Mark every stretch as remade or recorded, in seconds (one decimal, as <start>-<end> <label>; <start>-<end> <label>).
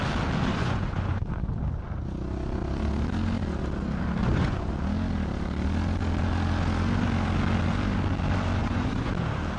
0.0-0.5 recorded; 0.5-1.5 remade; 1.5-4.2 recorded; 4.2-4.7 remade; 4.7-8.6 recorded; 8.6-9.1 remade; 9.1-9.6 recorded